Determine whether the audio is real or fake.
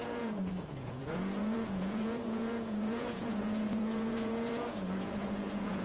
fake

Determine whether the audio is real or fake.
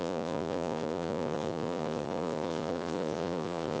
fake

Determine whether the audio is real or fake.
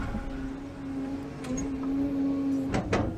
real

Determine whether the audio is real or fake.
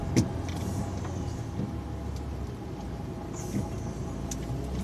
real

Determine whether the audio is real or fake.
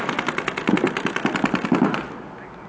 real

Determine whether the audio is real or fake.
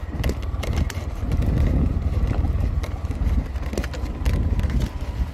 real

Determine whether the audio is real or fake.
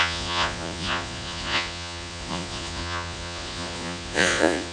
fake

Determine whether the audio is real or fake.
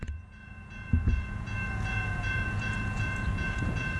fake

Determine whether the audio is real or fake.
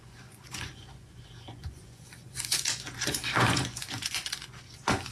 fake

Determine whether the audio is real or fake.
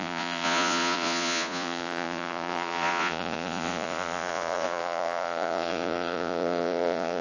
fake